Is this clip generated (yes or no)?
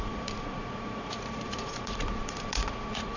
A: yes